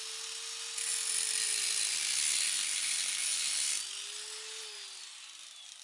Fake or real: real